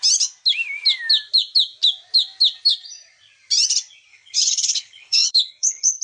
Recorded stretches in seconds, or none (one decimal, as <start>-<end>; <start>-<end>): 0.0-4.1